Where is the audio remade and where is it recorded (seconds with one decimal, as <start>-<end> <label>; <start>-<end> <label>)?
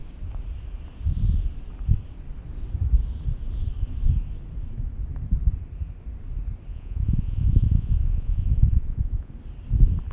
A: 0.0-6.7 recorded; 6.7-9.3 remade; 9.3-10.1 recorded